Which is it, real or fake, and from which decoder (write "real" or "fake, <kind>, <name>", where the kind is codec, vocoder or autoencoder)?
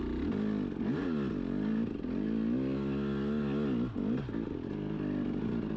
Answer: real